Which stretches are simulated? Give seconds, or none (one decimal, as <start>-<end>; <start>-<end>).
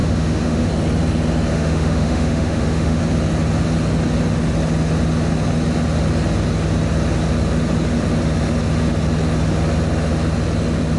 0.0-0.7; 1.5-3.0